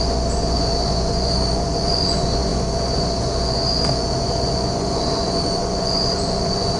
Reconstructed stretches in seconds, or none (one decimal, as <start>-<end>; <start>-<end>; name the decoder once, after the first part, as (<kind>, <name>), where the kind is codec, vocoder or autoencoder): 0.0-6.8 (vocoder, Vocos)